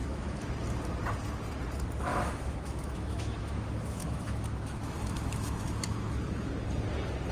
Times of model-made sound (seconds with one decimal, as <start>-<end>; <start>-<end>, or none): 0.0-0.5; 2.1-6.5